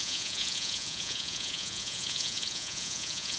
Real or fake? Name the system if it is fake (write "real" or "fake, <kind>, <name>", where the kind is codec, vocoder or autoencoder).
fake, vocoder, Vocos